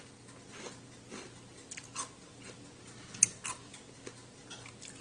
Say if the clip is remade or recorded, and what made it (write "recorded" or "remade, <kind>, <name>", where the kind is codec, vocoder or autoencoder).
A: recorded